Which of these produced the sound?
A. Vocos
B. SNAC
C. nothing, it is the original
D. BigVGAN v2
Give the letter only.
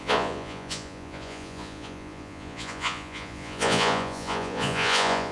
A